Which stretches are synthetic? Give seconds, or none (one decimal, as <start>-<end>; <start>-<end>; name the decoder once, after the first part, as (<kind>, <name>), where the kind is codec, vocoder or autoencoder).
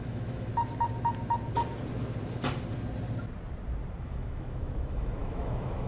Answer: 0.0-0.5 (autoencoder, DAC-VAE); 4.0-5.9